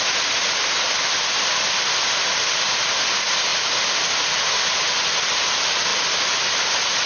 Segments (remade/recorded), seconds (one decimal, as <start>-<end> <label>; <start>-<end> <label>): 0.0-7.1 recorded